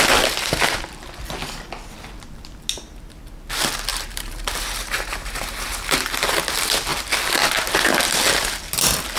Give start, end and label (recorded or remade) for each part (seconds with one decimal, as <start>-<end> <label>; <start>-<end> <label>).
0.0-3.9 recorded; 3.9-6.0 remade; 6.0-9.2 recorded